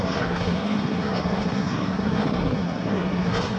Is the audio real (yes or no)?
no